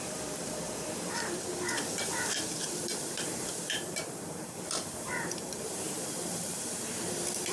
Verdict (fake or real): fake